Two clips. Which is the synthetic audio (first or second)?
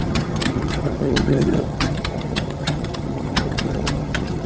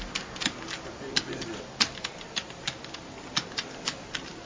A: first